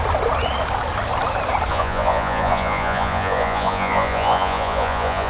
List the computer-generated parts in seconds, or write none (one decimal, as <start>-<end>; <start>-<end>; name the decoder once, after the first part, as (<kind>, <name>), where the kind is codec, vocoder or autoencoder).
1.7-5.3 (vocoder, Vocos)